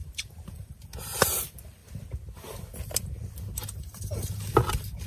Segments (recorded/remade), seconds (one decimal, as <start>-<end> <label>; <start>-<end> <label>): 0.0-0.9 remade; 0.9-5.1 recorded